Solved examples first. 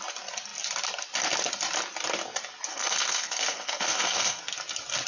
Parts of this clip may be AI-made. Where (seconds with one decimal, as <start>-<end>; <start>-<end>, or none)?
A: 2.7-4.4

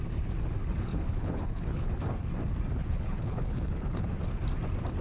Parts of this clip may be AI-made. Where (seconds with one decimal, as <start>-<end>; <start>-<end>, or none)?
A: 0.9-2.3; 2.8-4.2

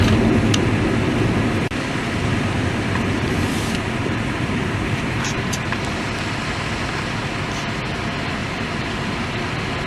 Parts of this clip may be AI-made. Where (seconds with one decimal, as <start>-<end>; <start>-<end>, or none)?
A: 2.3-6.2; 8.4-9.9

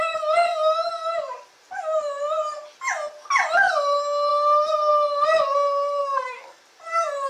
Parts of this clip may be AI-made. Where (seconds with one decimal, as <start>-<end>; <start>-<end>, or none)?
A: 6.0-6.6

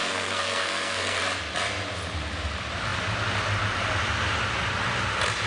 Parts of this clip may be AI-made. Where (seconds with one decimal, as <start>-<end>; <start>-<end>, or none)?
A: 0.0-1.2